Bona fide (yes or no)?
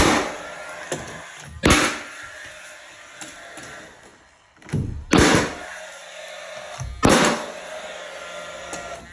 yes